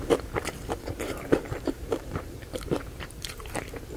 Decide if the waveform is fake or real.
fake